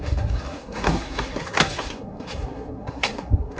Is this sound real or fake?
fake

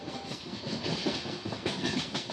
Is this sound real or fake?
fake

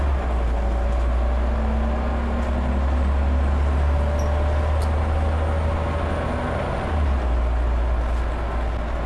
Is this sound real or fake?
real